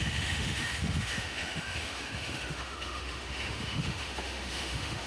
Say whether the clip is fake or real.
fake